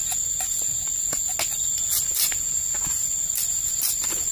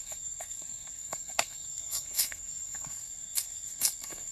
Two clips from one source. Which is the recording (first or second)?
first